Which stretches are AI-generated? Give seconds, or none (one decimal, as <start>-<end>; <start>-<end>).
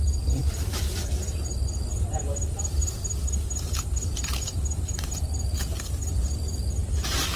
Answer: none